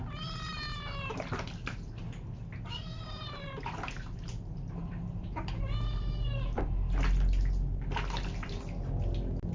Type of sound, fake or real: real